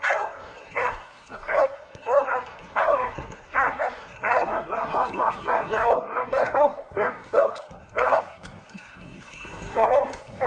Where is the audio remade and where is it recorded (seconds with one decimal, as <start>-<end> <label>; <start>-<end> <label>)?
0.0-10.5 remade